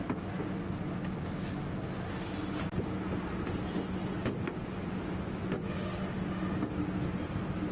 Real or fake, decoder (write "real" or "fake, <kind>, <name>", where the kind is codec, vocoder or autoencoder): real